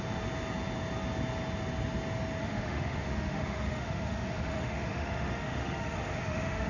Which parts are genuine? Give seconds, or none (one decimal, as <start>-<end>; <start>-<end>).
0.0-2.4